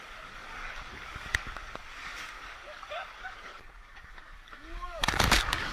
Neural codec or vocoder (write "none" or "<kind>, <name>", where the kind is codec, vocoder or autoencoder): codec, DAC